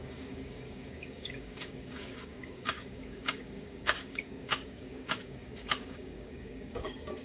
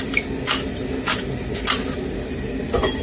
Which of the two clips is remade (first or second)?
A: first